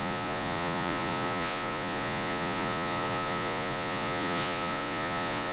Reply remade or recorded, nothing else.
remade